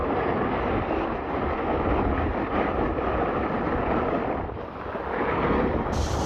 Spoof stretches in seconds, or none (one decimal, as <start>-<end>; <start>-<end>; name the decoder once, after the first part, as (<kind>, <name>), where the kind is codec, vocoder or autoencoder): none